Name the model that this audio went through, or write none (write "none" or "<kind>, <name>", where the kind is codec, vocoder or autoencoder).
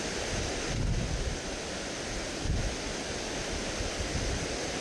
none